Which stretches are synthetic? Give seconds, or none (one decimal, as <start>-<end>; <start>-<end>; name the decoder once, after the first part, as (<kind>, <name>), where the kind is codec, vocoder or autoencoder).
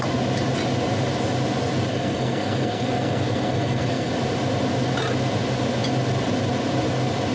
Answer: 1.9-4.1 (codec, SNAC)